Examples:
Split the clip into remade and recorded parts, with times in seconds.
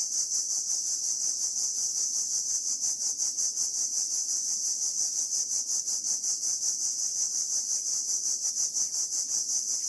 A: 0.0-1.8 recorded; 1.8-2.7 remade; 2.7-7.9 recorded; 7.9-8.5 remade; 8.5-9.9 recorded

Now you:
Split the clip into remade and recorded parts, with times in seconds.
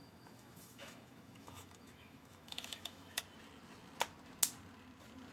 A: 0.0-3.2 remade; 3.2-5.3 recorded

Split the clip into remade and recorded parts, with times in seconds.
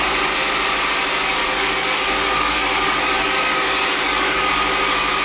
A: 0.0-1.4 recorded; 1.4-4.5 remade; 4.5-5.2 recorded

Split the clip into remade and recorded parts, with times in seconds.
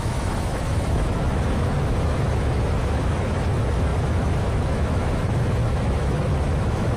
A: 0.0-7.0 remade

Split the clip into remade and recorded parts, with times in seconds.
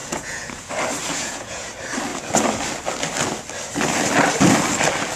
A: 0.0-0.7 remade; 0.7-1.1 recorded; 1.1-1.7 remade; 1.7-5.2 recorded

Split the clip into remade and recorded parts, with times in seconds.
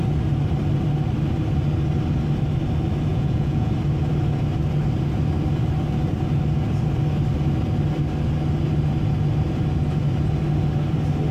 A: 0.0-3.1 recorded; 3.1-3.7 remade; 3.7-11.3 recorded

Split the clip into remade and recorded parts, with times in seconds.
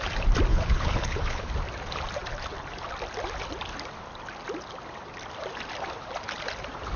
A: 0.0-0.5 recorded; 0.5-1.5 remade; 1.5-7.0 recorded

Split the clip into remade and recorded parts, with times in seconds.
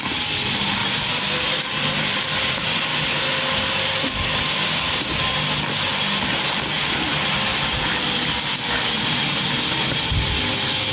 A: 0.0-10.9 recorded